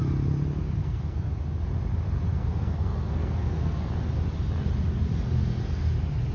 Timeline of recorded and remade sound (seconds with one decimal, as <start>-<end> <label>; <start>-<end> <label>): 0.0-0.8 recorded; 0.8-1.3 remade; 1.3-2.3 recorded; 2.3-3.8 remade; 3.8-6.3 recorded